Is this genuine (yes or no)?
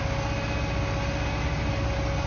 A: yes